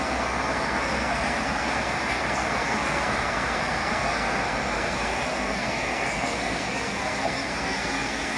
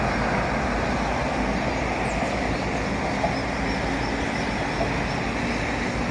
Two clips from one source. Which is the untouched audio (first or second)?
second